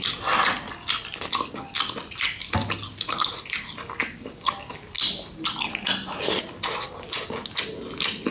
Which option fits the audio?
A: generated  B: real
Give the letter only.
B